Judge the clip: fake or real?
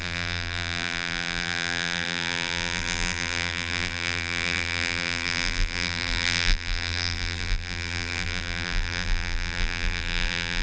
fake